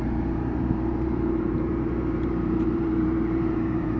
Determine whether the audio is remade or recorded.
remade